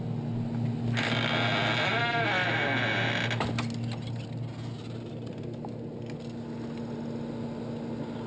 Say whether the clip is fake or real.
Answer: real